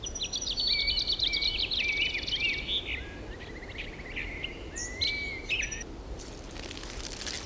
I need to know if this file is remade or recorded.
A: recorded